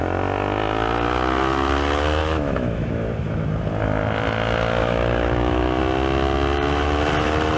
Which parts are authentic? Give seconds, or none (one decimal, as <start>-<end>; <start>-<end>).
0.0-2.2; 3.4-4.8; 5.8-7.6